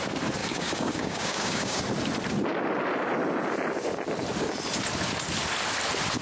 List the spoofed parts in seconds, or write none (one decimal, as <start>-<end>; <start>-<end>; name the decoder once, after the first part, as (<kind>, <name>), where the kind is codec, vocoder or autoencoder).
0.4-1.8 (codec, DAC)